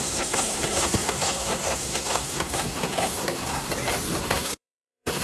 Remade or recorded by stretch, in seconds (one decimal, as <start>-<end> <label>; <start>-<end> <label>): 0.0-3.7 remade; 3.7-4.2 recorded; 4.2-5.2 remade